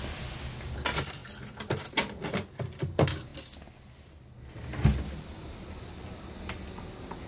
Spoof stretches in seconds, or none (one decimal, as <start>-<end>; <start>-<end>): none